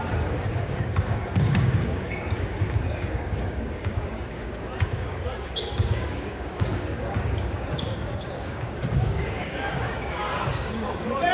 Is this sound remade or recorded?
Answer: remade